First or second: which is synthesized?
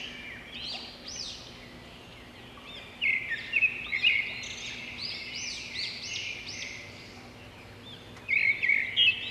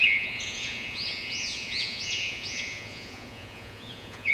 second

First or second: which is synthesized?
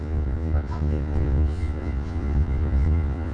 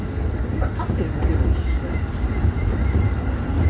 first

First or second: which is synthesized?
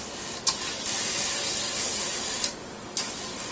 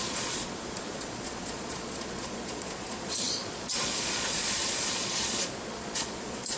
second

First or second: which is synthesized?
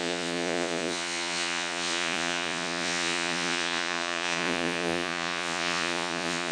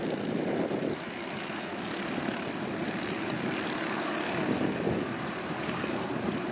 first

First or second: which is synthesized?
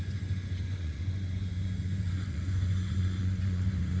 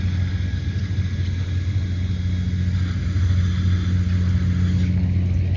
first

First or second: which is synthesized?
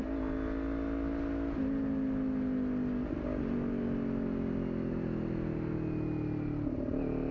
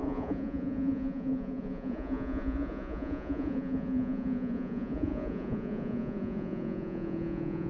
second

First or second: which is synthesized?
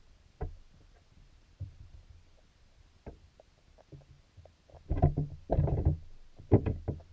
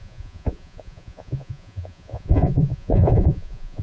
second